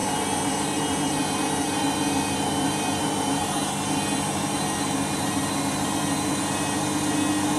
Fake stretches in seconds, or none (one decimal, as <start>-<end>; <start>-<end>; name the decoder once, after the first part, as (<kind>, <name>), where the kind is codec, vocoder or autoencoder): none